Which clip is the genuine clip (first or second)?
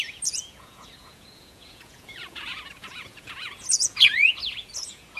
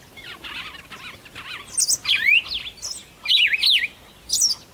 second